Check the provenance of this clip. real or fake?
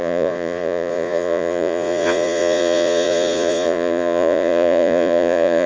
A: fake